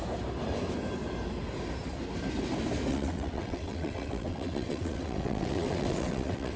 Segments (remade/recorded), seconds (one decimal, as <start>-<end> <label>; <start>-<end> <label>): 0.0-2.9 recorded; 2.9-6.6 remade